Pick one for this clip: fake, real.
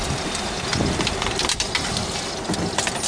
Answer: real